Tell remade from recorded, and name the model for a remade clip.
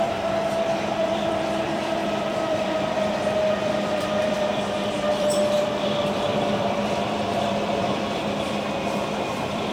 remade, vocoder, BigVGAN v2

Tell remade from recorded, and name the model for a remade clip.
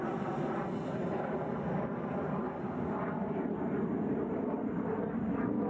recorded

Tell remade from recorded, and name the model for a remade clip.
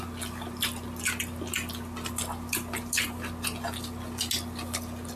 recorded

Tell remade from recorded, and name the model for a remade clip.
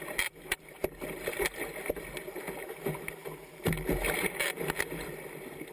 recorded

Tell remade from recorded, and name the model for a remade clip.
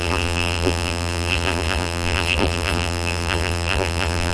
remade, vocoder, BigVGAN v2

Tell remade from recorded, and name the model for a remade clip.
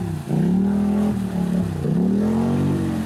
recorded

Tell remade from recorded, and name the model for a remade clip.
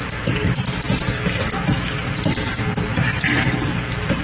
recorded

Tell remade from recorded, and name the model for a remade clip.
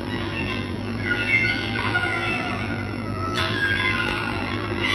remade, vocoder, BigVGAN v2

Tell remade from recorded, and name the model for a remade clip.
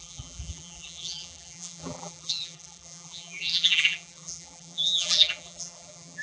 remade, vocoder, BigVGAN v2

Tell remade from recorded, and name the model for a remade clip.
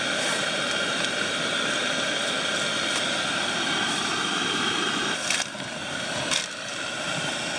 recorded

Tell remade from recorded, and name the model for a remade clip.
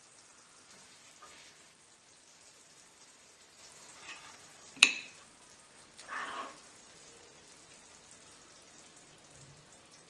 remade, vocoder, BigVGAN v2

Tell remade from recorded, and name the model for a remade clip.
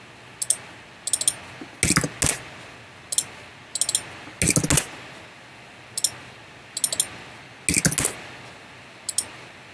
recorded